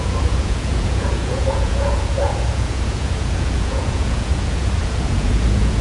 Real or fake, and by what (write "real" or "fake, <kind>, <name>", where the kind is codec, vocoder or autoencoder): fake, vocoder, Vocos